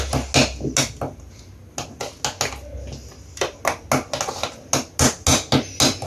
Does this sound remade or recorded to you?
recorded